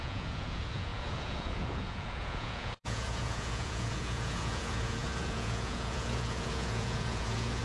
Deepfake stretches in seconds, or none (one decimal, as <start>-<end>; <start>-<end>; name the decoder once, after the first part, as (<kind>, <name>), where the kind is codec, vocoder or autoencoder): 0.0-7.6 (vocoder, Vocos)